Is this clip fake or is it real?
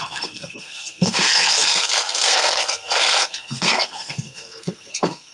fake